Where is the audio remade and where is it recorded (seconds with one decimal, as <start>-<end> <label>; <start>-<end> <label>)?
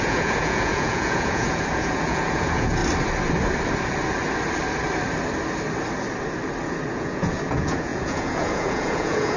0.0-2.8 remade; 2.8-6.9 recorded; 6.9-9.4 remade